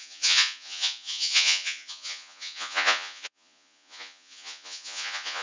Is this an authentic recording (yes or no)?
no